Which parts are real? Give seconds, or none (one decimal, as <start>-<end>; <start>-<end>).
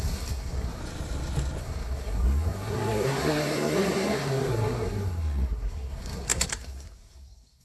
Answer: 0.8-1.6